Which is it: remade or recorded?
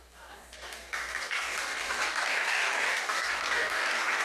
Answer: remade